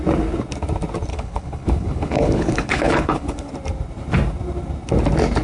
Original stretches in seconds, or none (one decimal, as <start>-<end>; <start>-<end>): 0.0-1.1; 3.5-5.4